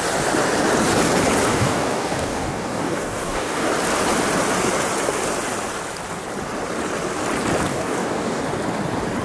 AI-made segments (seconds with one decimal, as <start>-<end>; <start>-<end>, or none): 1.5-3.7; 7.7-8.4